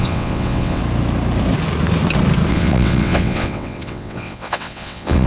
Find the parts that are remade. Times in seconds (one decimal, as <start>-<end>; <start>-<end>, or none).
0.0-0.8; 2.5-5.3

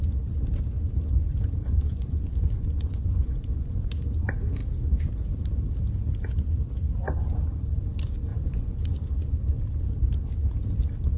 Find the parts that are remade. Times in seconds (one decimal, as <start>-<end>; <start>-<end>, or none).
1.6-3.9; 8.3-8.8

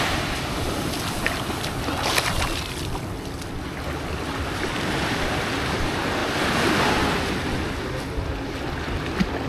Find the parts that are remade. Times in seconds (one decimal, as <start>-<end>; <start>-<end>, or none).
none